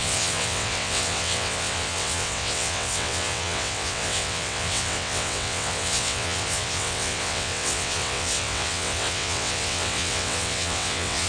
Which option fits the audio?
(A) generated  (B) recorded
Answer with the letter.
A